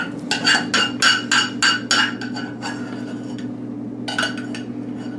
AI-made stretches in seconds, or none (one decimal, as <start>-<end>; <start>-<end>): none

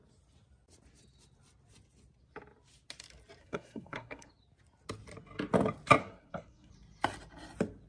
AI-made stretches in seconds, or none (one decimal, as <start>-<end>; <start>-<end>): 3.4-4.3; 6.0-6.7

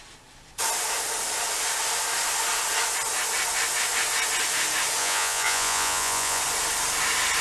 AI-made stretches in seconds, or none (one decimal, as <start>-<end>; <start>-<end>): 5.0-6.4